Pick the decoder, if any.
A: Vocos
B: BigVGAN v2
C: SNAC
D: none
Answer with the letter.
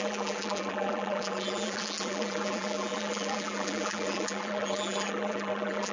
B